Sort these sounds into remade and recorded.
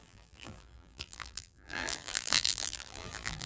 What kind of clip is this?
remade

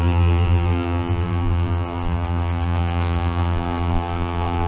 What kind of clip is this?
remade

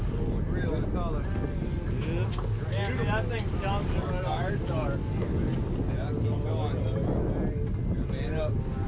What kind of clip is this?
recorded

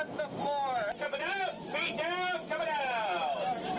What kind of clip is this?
recorded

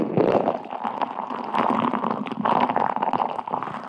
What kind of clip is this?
remade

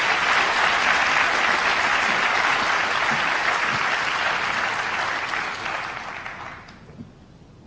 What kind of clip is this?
recorded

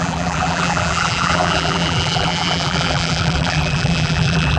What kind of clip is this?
remade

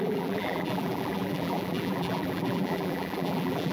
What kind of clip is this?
remade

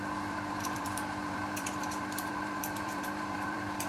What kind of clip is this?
remade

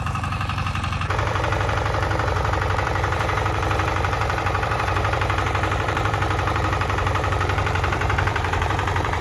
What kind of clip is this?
remade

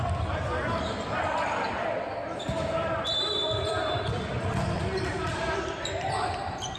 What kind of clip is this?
remade